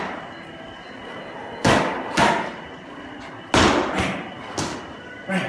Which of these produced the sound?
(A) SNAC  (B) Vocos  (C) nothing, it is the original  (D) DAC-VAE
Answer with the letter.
C